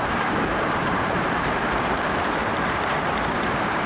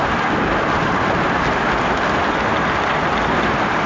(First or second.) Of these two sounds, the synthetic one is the first